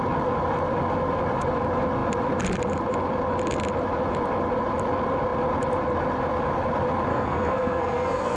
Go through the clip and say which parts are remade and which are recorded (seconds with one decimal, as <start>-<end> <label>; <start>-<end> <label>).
0.0-7.1 recorded; 7.1-8.4 remade